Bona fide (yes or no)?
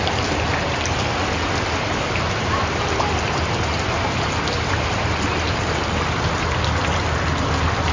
yes